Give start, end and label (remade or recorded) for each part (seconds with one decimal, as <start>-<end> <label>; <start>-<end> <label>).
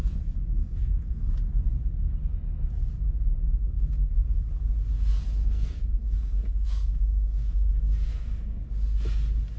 0.0-0.6 recorded; 0.6-1.3 remade; 1.3-3.6 recorded; 3.6-4.1 remade; 4.1-5.4 recorded; 5.4-7.7 remade; 7.7-8.1 recorded; 8.1-8.6 remade; 8.6-9.6 recorded